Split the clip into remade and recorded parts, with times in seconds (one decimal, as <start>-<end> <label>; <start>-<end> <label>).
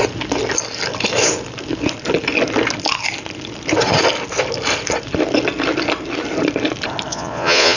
0.0-7.1 recorded; 7.1-7.8 remade